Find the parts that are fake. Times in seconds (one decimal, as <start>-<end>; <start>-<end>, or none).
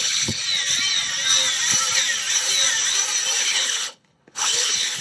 0.0-0.4; 3.4-5.0